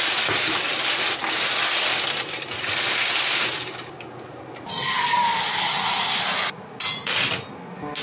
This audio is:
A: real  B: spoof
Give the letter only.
A